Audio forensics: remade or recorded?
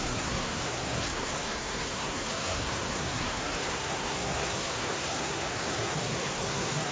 remade